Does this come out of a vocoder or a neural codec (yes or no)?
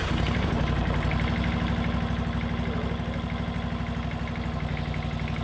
no